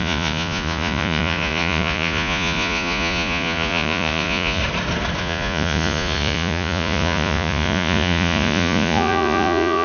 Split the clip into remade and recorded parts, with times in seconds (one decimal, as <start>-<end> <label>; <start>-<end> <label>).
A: 0.0-4.6 remade; 4.6-5.2 recorded; 5.2-9.8 remade